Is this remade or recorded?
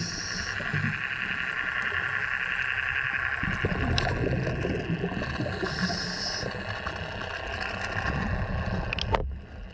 recorded